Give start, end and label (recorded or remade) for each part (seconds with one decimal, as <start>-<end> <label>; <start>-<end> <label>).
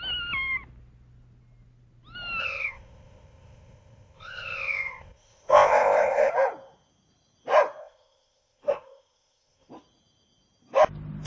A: 0.0-2.4 recorded; 2.4-6.3 remade; 6.3-7.8 recorded; 7.8-9.7 remade; 9.7-11.3 recorded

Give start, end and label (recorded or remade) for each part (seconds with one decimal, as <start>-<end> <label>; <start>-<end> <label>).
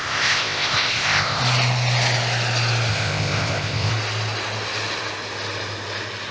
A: 0.0-1.4 remade; 1.4-2.9 recorded; 2.9-3.9 remade; 3.9-6.3 recorded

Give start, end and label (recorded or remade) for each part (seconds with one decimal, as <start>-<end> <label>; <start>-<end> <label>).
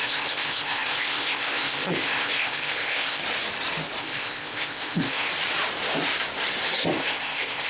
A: 0.0-3.2 remade; 3.2-4.0 recorded; 4.0-5.3 remade; 5.3-6.8 recorded; 6.8-7.7 remade